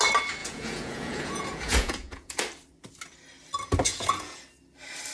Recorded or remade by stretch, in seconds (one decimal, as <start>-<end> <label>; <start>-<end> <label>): 0.0-0.4 recorded; 0.4-2.4 remade; 2.4-3.9 recorded; 3.9-4.4 remade; 4.4-5.1 recorded